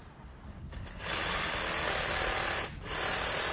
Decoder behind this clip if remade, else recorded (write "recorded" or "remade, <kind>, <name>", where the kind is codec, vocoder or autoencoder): recorded